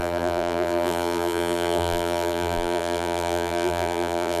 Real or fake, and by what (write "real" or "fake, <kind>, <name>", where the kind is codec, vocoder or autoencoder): fake, vocoder, BigVGAN v2